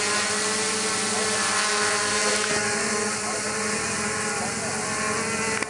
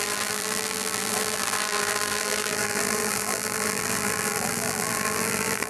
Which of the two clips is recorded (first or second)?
first